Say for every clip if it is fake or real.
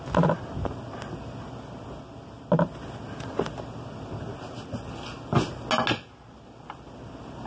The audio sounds real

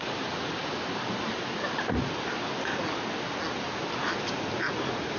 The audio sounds real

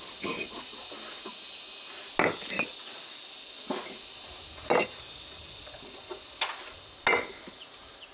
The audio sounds real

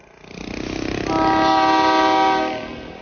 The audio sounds real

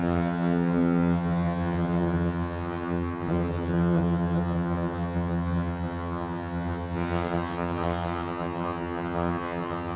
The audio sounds fake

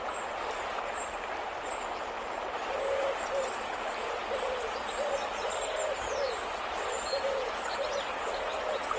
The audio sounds real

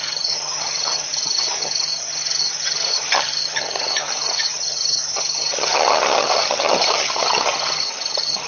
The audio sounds fake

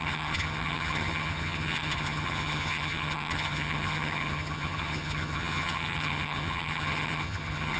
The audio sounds fake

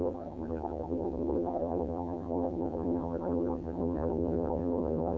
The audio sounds fake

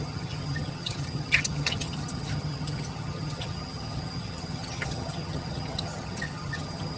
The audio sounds fake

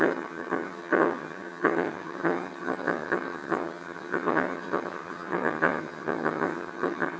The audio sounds fake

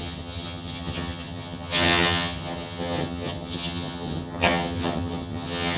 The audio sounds fake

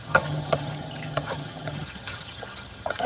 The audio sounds fake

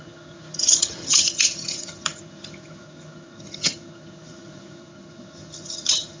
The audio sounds fake